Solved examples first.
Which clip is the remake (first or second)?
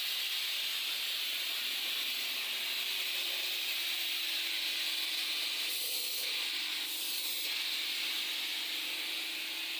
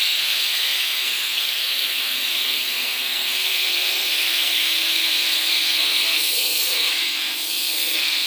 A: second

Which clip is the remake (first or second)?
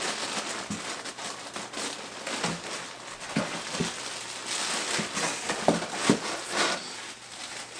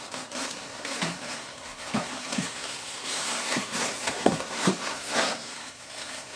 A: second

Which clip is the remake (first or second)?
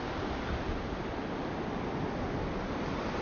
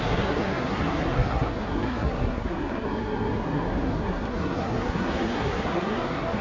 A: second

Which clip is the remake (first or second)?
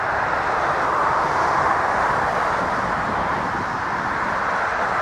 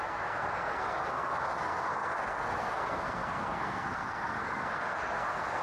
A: second